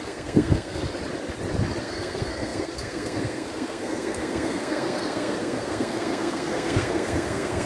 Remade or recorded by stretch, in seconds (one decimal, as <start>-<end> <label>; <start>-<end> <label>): 0.0-0.8 remade; 0.8-1.8 recorded; 1.8-7.7 remade